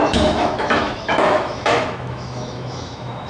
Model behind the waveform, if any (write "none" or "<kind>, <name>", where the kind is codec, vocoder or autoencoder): autoencoder, DAC-VAE